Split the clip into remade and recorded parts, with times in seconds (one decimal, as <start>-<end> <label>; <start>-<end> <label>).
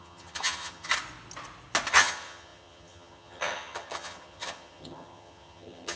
0.0-0.9 remade; 0.9-1.9 recorded; 1.9-6.0 remade